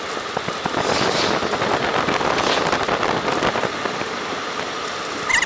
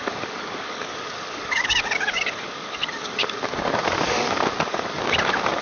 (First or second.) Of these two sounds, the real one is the first